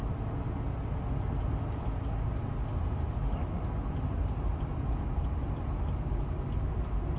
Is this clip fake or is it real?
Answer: real